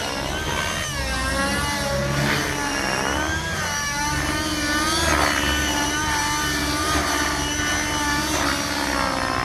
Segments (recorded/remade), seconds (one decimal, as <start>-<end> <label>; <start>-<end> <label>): 0.0-6.8 recorded; 6.8-7.6 remade; 7.6-9.4 recorded